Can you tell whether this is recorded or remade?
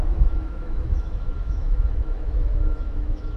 remade